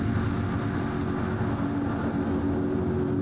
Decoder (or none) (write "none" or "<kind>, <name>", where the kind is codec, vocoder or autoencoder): none